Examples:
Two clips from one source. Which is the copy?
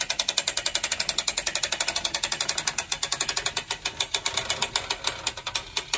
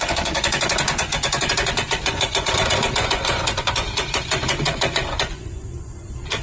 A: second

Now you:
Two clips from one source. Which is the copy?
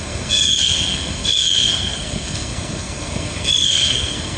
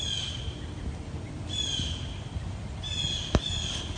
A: first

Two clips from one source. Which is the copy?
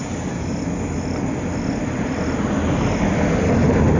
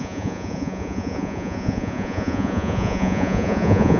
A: second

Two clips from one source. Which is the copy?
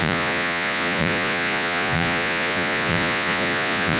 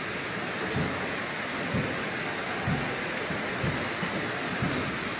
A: first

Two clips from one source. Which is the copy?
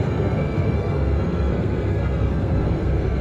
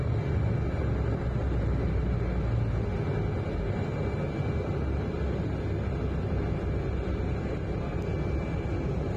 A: first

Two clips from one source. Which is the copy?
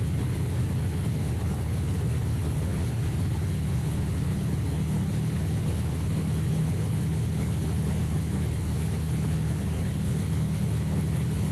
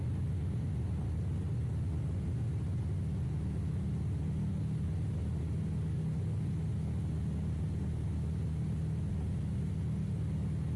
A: first